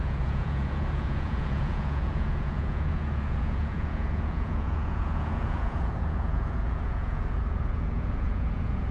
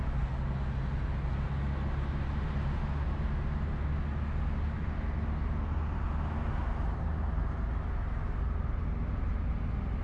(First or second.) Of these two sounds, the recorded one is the second